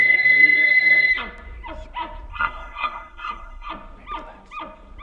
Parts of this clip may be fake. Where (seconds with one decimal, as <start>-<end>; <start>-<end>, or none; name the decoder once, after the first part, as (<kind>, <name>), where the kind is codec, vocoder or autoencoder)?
0.0-1.1 (codec, SNAC); 2.3-3.7

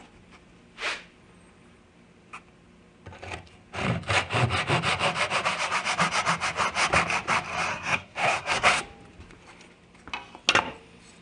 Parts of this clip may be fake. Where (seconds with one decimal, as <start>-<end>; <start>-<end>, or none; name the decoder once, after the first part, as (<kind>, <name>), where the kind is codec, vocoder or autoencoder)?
7.7-8.8 (codec, SNAC)

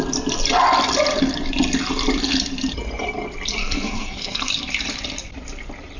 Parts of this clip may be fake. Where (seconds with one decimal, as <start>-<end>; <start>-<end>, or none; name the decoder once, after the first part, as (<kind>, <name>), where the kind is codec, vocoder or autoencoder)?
3.6-4.5 (codec, SNAC)

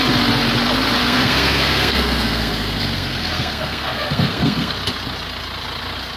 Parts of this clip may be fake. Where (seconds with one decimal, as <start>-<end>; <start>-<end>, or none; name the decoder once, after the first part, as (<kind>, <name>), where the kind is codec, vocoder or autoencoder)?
1.0-4.7 (codec, SNAC)